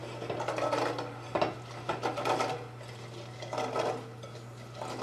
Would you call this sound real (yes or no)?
yes